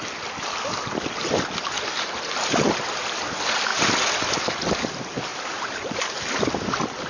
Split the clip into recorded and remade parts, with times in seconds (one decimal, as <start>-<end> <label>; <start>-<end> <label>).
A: 0.0-7.1 recorded